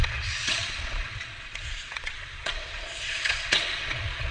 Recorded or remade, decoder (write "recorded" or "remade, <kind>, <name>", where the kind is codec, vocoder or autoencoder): remade, vocoder, Vocos